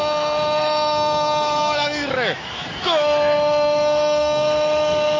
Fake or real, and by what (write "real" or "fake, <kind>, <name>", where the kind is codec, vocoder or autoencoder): fake, autoencoder, DAC-VAE